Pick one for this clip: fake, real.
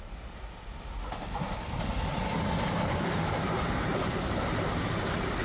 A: real